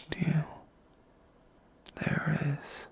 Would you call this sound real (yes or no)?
yes